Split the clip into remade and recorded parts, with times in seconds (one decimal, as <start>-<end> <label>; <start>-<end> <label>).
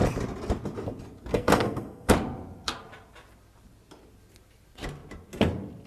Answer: 0.0-1.3 recorded; 1.3-2.1 remade; 2.1-5.9 recorded